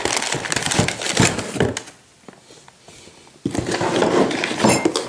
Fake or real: real